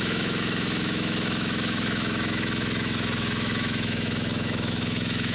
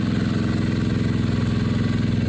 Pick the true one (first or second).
second